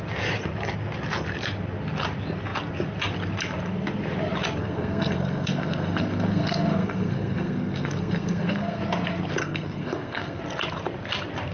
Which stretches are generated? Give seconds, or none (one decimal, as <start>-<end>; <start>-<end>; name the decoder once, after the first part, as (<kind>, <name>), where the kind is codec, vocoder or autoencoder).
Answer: 4.6-8.8 (codec, SNAC); 9.4-10.4